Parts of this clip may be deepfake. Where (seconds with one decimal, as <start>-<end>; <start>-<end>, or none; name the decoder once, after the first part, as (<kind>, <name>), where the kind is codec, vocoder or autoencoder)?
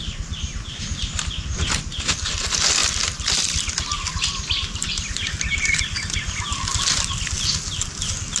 none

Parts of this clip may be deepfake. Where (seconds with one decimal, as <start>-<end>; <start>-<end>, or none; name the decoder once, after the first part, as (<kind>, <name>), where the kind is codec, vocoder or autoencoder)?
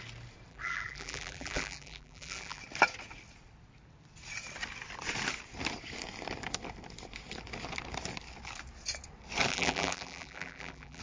0.5-2.6 (vocoder, BigVGAN v2); 9.5-11.0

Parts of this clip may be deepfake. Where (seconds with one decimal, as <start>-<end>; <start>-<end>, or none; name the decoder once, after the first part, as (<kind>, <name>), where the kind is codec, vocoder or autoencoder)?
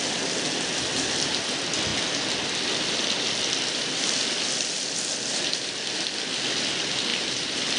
7.1-7.8 (vocoder, BigVGAN v2)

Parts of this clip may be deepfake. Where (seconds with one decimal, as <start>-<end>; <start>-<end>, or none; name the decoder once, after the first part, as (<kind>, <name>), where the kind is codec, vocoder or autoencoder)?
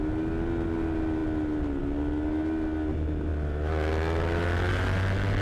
none